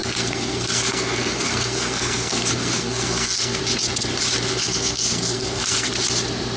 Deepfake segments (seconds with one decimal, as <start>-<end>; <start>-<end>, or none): 0.0-3.6; 4.5-5.9